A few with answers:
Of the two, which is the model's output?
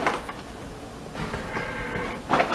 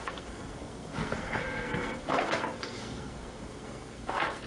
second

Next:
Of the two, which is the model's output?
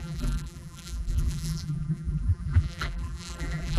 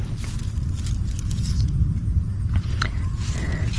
first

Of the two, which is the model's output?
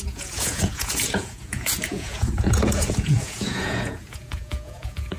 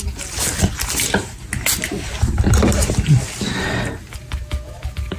first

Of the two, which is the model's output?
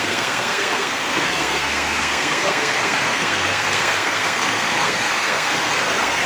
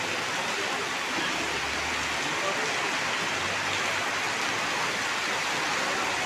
first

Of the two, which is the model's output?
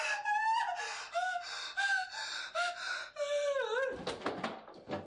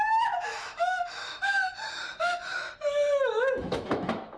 second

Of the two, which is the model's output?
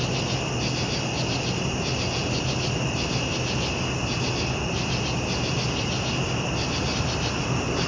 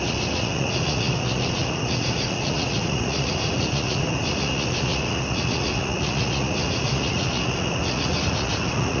second